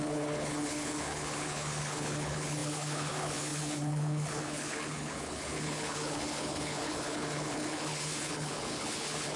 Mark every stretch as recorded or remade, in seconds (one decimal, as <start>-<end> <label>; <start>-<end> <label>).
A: 0.0-9.4 remade